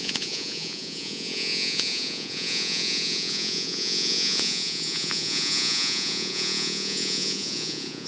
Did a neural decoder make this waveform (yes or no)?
yes